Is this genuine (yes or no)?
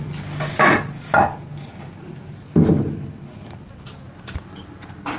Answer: yes